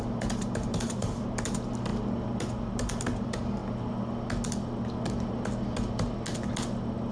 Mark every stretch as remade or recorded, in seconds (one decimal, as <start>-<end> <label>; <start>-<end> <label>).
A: 0.0-1.9 remade; 1.9-2.4 recorded; 2.4-3.6 remade; 3.6-7.1 recorded